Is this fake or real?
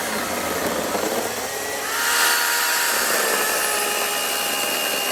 fake